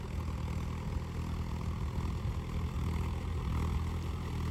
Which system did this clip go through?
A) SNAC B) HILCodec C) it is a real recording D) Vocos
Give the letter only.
C